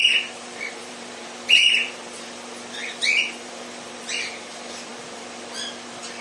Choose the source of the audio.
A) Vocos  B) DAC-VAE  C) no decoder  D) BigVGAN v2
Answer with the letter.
D